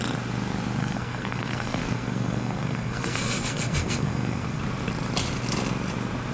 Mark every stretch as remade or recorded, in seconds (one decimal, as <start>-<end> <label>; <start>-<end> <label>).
0.0-0.8 recorded; 0.8-4.6 remade; 4.6-6.3 recorded